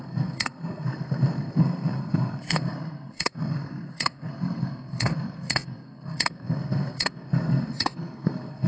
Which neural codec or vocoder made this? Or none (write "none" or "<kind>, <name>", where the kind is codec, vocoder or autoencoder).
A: codec, SNAC